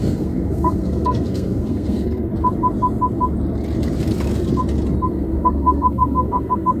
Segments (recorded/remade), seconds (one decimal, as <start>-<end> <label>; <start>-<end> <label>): 0.0-2.3 remade; 2.3-5.1 recorded; 5.1-6.8 remade